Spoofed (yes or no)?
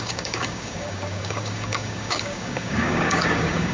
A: yes